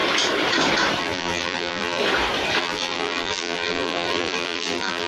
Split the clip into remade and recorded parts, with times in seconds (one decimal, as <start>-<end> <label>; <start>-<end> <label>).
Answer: 0.0-1.0 recorded; 1.0-2.0 remade; 2.0-2.6 recorded; 2.6-5.1 remade